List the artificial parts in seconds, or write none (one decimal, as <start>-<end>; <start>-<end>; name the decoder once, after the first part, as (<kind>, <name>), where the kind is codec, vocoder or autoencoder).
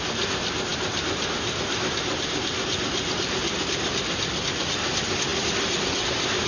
none